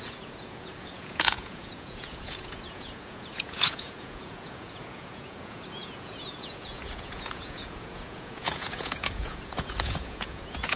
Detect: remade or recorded remade